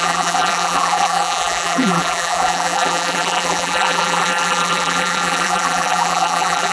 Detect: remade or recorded remade